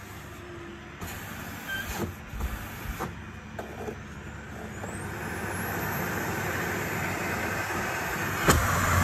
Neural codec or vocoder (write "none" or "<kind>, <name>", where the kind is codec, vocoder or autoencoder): none